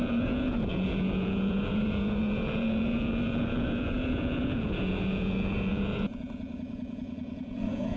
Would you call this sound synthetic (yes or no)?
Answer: yes